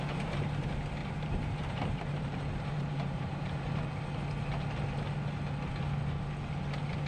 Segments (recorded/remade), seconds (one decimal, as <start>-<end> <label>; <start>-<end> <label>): 0.0-1.0 recorded; 1.0-4.0 remade; 4.0-7.1 recorded